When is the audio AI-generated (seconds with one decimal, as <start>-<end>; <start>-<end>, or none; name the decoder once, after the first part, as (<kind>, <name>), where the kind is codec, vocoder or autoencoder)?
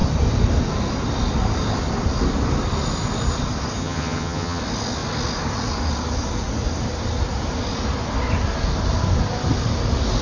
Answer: 3.8-4.6 (vocoder, HiFi-GAN)